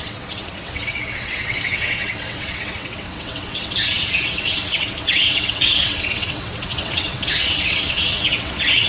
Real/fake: fake